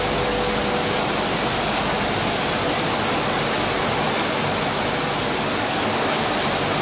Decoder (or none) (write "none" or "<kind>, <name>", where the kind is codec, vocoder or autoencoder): none